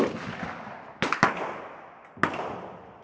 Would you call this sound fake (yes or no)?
no